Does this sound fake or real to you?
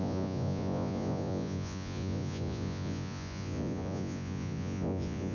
fake